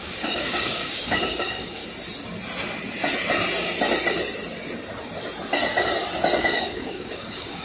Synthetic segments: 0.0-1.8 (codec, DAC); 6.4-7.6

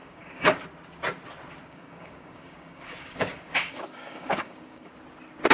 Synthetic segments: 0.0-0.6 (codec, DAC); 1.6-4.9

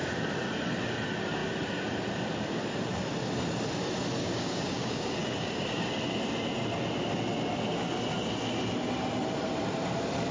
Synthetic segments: 4.2-5.9 (codec, DAC)

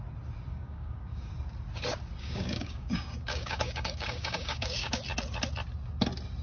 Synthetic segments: 0.5-1.3 (codec, DAC); 2.2-5.0

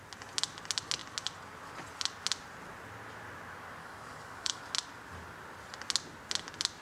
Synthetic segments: 3.8-4.6 (codec, DAC)

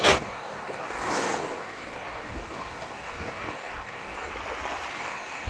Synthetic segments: 0.0-4.3 (codec, DAC); 4.9-5.5

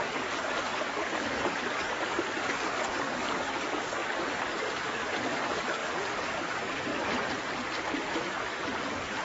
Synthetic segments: 0.0-6.9 (codec, DAC); 8.2-9.2

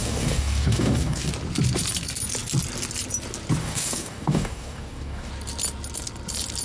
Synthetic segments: 0.0-1.3 (codec, DAC); 3.6-5.3